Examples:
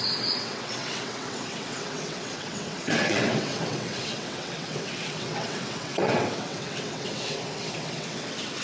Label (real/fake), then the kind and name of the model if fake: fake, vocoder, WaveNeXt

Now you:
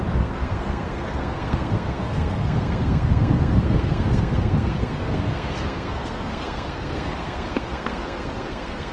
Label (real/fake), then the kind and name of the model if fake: fake, codec, SNAC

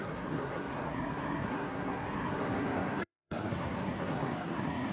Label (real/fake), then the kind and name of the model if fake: fake, codec, SNAC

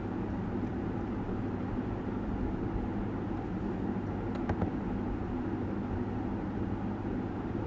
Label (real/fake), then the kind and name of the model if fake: real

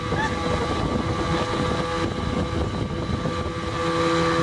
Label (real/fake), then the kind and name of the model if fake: real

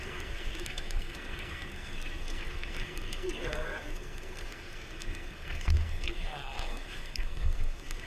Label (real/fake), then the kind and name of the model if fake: fake, codec, SNAC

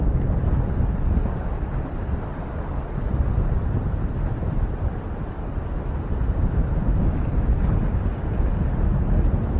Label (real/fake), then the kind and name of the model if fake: real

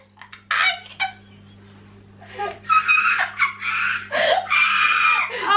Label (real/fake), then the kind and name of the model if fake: real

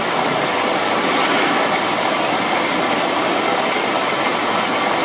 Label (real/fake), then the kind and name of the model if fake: real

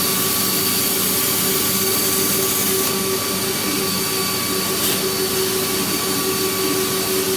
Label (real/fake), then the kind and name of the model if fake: real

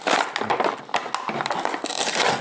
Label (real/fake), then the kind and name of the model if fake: real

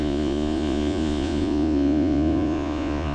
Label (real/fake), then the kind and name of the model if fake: fake, vocoder, Vocos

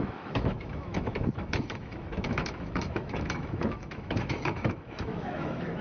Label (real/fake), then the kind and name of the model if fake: fake, autoencoder, DAC-VAE